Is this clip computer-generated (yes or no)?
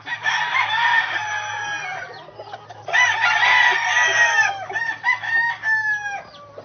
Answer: no